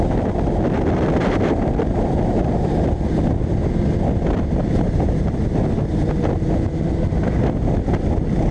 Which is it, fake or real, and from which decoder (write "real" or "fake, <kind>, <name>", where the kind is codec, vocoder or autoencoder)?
real